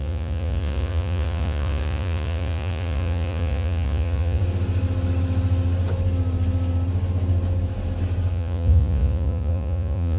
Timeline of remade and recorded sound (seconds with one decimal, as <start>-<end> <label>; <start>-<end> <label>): 0.0-4.4 remade; 4.4-8.3 recorded; 8.3-10.2 remade